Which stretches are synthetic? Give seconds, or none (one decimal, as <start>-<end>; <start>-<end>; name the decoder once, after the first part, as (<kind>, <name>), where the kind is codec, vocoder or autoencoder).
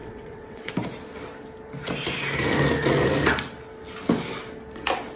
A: 0.0-0.7 (vocoder, WaveNeXt)